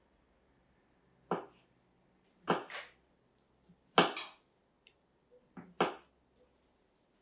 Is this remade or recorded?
recorded